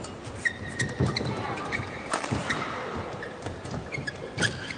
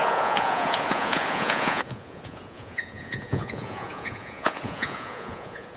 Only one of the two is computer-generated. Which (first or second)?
second